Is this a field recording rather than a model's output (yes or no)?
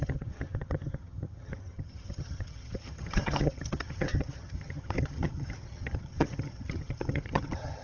no